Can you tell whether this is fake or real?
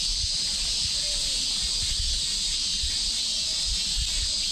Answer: real